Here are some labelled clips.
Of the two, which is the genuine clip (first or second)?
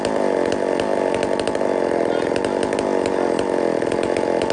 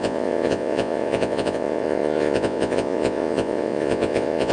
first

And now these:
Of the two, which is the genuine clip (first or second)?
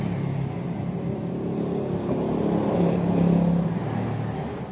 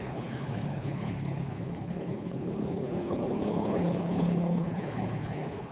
first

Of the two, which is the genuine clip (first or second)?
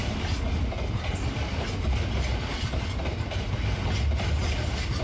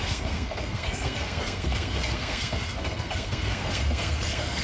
first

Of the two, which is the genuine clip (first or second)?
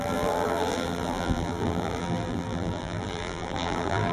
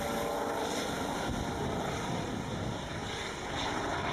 second